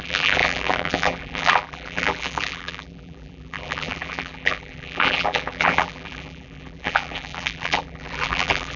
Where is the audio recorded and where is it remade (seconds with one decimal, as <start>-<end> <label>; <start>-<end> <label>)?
0.0-8.8 remade